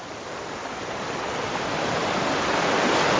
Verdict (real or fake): real